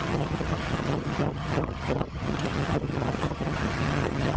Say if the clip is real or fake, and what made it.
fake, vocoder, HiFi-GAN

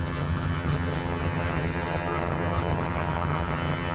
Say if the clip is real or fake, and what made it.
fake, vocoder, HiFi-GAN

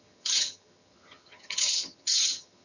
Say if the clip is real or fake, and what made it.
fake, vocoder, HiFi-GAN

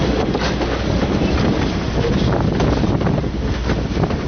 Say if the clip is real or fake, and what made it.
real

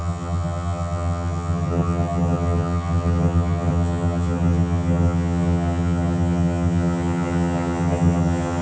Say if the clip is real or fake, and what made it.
fake, vocoder, HiFi-GAN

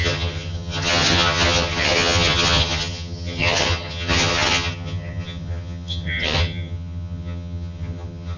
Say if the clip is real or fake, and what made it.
fake, vocoder, HiFi-GAN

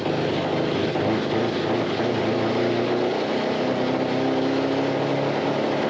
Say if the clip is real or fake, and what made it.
real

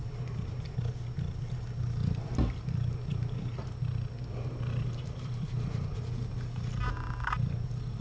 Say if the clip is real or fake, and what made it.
real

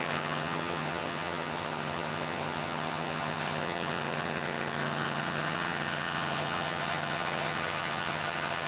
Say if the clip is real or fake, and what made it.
fake, vocoder, HiFi-GAN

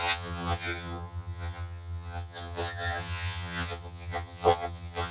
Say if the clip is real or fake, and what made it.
fake, vocoder, HiFi-GAN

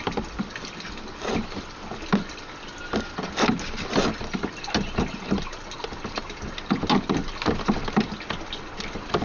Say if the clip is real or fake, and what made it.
real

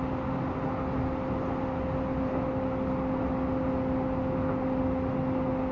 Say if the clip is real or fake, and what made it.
real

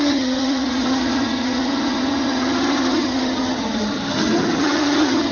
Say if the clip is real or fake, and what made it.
fake, vocoder, HiFi-GAN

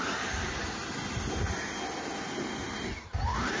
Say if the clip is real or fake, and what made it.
real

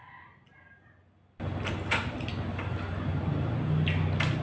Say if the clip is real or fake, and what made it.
real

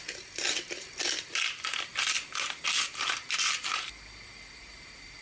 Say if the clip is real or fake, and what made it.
real